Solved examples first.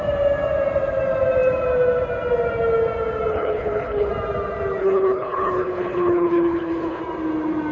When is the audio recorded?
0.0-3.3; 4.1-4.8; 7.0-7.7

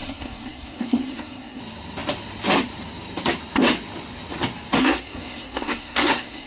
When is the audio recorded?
1.6-4.8